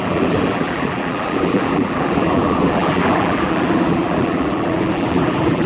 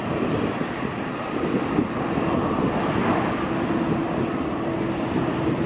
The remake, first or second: first